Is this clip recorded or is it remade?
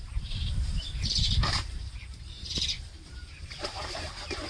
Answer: remade